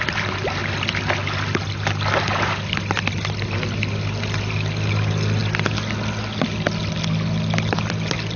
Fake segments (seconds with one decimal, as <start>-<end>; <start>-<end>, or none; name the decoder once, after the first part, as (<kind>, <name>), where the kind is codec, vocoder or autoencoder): none

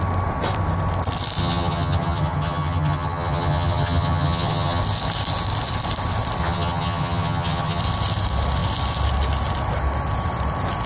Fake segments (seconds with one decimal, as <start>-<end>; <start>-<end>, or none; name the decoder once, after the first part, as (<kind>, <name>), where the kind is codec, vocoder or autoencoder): 1.4-4.8 (vocoder, HiFi-GAN); 6.4-7.8